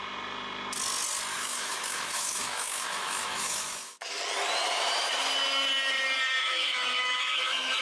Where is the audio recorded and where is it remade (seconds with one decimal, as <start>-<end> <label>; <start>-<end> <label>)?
0.0-1.3 recorded; 1.3-4.2 remade; 4.2-6.4 recorded; 6.4-7.8 remade